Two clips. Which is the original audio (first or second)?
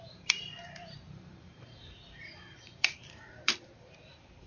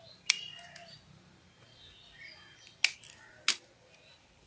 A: second